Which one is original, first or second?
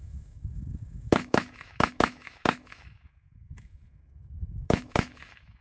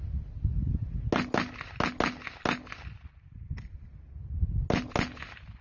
second